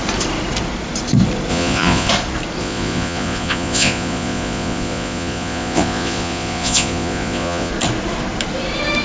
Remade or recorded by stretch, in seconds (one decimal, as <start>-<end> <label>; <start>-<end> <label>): 0.0-1.5 recorded; 1.5-2.1 remade; 2.1-2.6 recorded; 2.6-7.7 remade; 7.7-9.0 recorded